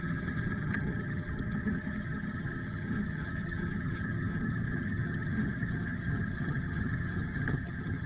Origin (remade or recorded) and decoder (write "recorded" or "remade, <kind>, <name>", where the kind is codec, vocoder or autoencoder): remade, vocoder, HiFi-GAN